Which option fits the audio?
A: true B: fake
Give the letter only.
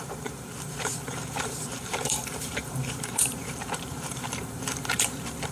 B